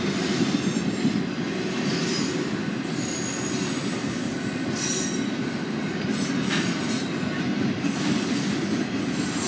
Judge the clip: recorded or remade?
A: recorded